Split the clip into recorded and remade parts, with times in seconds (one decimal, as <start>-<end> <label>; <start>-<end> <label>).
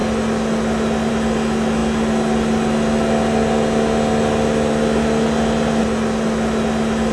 0.0-7.1 recorded